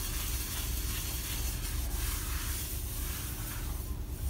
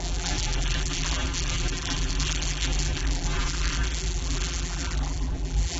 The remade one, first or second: second